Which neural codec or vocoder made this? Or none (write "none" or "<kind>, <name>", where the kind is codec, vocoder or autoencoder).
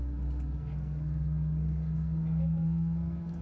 codec, SNAC